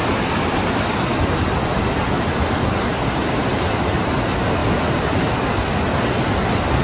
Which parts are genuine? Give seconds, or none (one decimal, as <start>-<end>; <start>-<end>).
0.0-4.6; 5.2-6.8